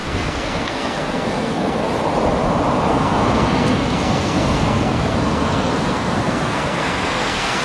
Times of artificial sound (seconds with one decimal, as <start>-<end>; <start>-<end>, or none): 0.0-1.9; 2.9-7.6

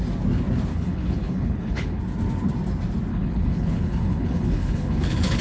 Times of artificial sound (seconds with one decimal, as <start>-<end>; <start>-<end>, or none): 0.7-2.0; 3.1-5.4

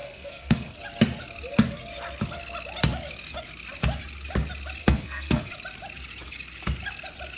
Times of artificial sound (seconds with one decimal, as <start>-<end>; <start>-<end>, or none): 0.0-0.8; 4.8-5.5

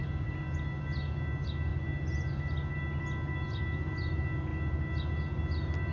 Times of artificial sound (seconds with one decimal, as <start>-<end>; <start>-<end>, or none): none

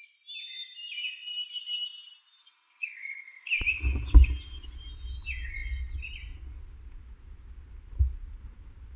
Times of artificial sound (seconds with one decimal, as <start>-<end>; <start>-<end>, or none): 2.4-3.5

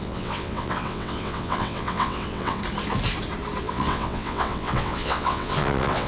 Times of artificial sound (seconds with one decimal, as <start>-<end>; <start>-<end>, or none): 0.0-2.6; 3.6-6.1

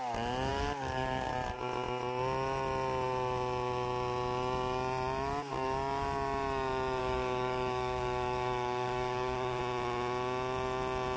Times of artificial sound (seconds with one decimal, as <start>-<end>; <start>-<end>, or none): 0.5-1.3; 7.0-9.6